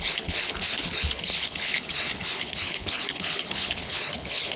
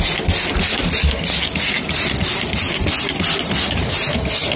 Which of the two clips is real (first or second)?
second